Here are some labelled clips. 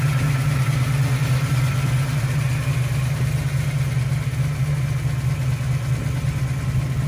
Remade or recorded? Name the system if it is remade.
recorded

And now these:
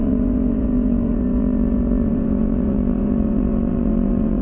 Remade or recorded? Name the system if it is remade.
remade, vocoder, Vocos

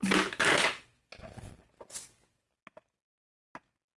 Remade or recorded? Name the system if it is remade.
recorded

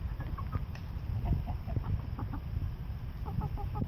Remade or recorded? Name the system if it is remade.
recorded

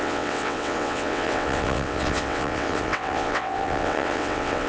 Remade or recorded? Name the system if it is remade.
remade, vocoder, WaveNeXt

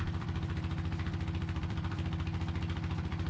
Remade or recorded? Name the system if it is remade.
remade, vocoder, BigVGAN v2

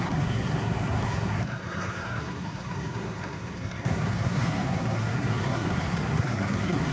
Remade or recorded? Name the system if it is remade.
remade, codec, SNAC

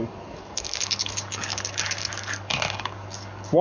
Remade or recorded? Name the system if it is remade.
remade, codec, DAC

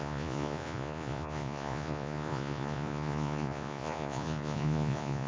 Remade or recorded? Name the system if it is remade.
remade, vocoder, Vocos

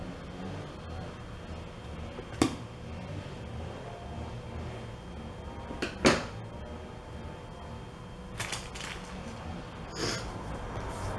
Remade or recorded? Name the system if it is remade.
recorded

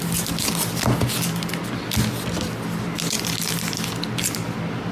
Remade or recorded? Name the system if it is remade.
recorded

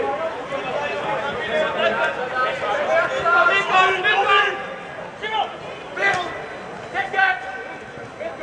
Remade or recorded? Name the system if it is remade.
recorded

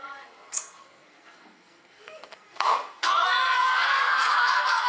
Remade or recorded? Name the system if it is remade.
remade, codec, SNAC